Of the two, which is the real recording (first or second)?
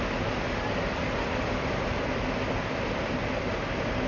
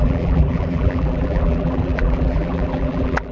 first